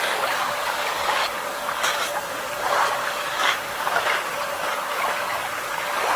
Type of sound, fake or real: fake